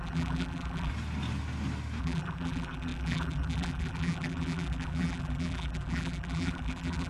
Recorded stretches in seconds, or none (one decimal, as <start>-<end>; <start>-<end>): 0.9-2.0